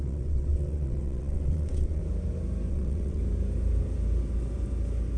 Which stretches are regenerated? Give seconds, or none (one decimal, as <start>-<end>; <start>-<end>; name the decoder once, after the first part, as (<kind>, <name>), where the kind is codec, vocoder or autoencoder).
0.0-2.0 (vocoder, WaveNeXt); 2.7-3.2